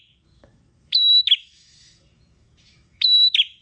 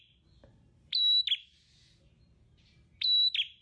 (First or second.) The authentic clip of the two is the second